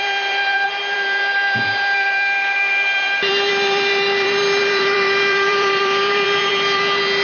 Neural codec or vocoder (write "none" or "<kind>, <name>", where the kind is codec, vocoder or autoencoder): vocoder, BigVGAN v2